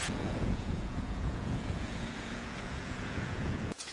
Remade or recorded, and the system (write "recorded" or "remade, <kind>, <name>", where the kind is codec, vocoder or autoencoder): remade, vocoder, Vocos